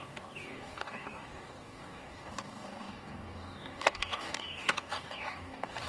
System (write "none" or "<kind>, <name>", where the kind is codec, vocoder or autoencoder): codec, DAC